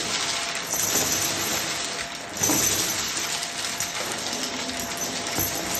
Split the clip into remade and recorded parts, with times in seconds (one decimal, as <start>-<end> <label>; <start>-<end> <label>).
0.0-5.8 recorded